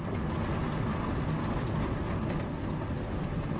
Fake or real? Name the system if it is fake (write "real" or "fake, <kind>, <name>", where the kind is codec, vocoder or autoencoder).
real